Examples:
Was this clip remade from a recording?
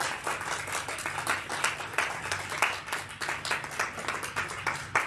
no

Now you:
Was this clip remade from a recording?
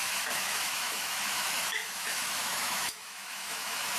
yes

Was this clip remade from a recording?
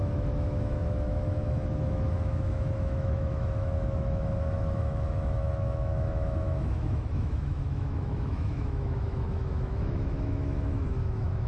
yes